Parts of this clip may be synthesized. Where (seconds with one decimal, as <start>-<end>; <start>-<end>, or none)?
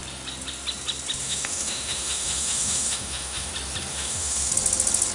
1.2-3.5; 3.9-4.5